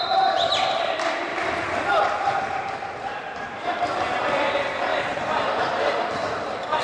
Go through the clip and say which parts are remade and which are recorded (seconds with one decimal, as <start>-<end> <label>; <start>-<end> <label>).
0.0-6.8 remade